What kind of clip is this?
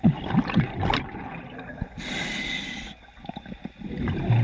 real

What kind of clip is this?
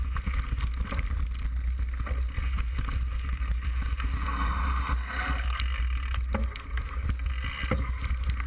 real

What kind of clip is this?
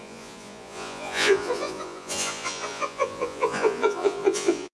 fake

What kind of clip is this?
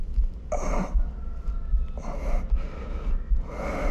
real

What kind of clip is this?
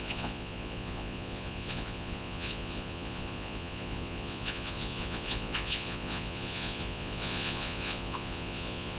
fake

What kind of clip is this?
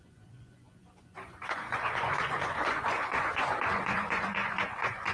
fake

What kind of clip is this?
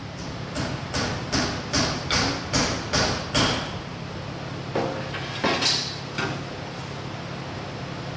real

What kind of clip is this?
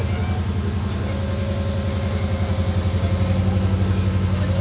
real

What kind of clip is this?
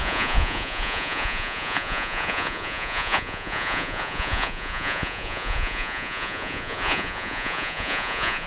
fake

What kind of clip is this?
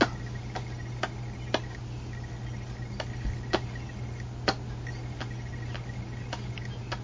real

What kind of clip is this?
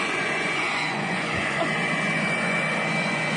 fake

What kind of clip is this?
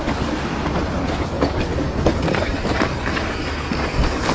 real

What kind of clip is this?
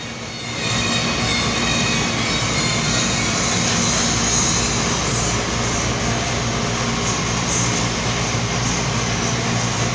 real